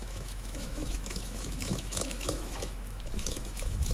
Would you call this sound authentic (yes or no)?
no